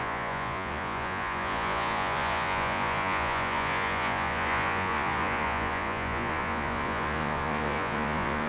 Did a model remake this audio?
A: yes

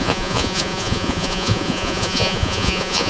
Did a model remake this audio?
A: yes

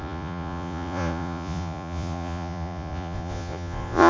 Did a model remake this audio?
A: yes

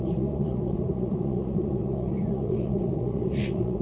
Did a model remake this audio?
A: yes